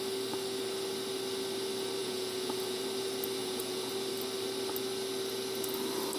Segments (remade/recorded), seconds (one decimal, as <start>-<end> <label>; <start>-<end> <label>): 0.0-2.0 recorded; 2.0-2.8 remade; 2.8-3.4 recorded; 3.4-3.9 remade; 3.9-6.2 recorded